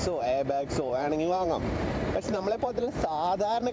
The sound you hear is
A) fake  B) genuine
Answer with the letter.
A